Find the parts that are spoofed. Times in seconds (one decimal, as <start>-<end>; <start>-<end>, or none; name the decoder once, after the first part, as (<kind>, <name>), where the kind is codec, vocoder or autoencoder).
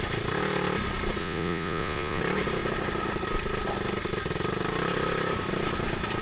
1.2-2.2 (vocoder, Vocos)